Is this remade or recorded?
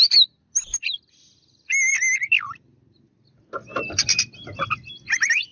recorded